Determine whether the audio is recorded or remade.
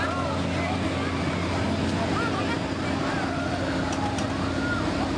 recorded